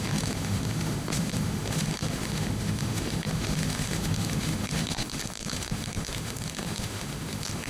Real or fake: fake